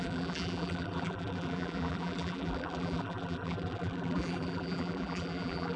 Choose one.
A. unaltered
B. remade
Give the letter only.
B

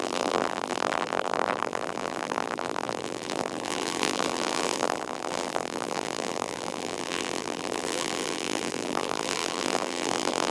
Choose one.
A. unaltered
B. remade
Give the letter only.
B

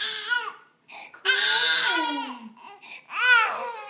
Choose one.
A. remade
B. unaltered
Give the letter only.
B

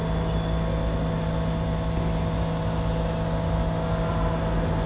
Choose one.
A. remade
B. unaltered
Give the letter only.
B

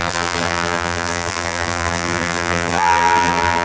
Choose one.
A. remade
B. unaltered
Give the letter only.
A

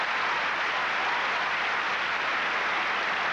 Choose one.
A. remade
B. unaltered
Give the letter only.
B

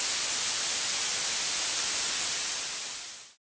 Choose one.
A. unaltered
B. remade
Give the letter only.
B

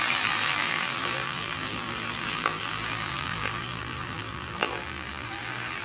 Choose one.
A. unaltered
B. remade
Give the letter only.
B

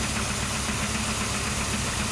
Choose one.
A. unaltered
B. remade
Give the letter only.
A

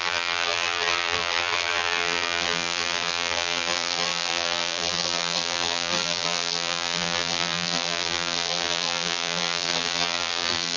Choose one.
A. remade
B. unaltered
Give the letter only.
A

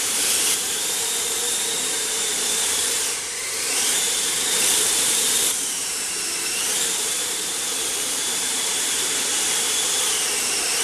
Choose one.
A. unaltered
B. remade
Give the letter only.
B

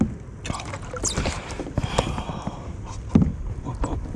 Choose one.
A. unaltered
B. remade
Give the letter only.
A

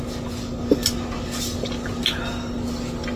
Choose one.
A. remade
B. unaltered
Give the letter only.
B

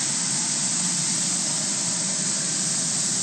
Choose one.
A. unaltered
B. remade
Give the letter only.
A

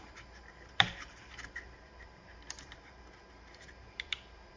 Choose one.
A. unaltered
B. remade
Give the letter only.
B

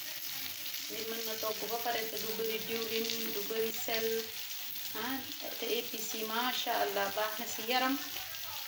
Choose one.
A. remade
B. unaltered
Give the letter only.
B